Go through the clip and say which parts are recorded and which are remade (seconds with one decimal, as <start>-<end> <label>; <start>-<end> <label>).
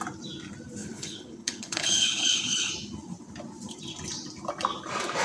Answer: 0.0-0.8 recorded; 0.8-2.7 remade; 2.7-5.2 recorded